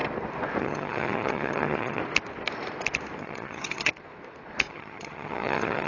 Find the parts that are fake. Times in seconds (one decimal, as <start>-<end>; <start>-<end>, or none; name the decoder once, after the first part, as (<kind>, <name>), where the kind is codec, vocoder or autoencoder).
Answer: 0.6-2.0 (vocoder, HiFi-GAN); 3.2-3.9; 4.7-5.9